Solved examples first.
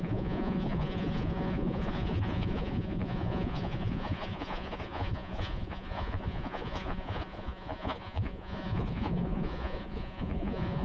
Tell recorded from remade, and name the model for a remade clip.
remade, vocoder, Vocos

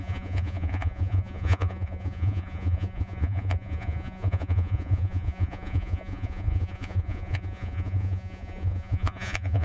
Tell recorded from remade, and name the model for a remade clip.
remade, vocoder, Vocos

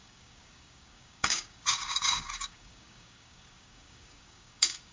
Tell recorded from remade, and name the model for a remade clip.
remade, codec, DAC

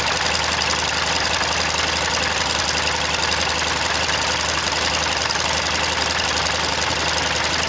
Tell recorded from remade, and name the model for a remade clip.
recorded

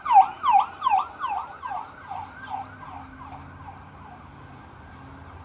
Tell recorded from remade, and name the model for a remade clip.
recorded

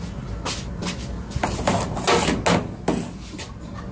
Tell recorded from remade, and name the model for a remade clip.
recorded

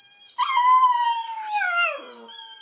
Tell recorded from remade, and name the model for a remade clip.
recorded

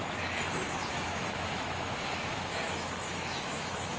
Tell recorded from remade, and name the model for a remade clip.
remade, autoencoder, DAC-VAE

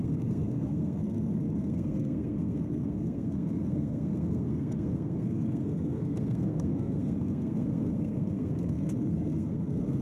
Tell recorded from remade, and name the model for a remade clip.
remade, codec, SNAC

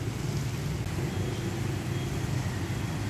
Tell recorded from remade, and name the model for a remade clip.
recorded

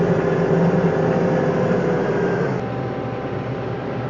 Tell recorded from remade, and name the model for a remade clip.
recorded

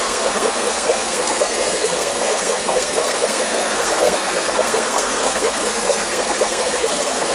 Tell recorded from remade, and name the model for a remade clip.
remade, codec, SNAC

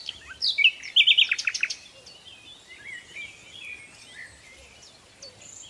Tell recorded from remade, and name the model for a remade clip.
recorded